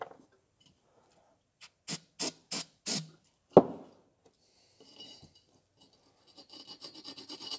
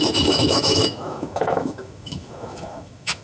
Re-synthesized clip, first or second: second